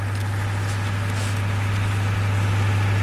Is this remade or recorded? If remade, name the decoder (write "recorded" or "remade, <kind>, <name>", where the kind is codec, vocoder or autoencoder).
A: recorded